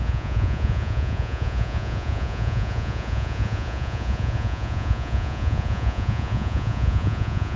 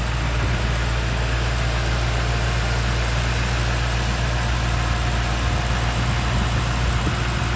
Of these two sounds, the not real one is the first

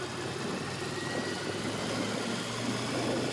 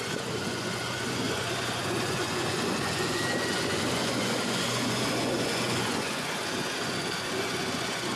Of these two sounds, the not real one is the second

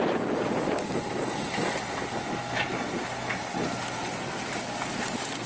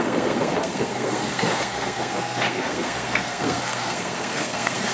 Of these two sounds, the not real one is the second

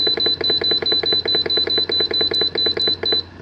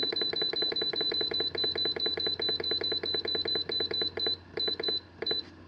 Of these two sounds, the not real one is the second